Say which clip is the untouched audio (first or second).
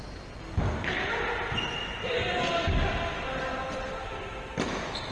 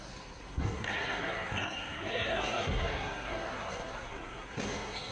first